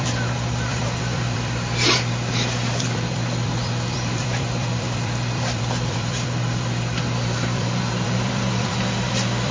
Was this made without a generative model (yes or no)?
no